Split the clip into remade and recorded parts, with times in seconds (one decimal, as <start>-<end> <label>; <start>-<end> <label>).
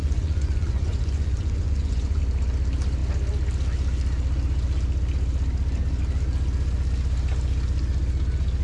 0.0-2.2 remade; 2.2-8.6 recorded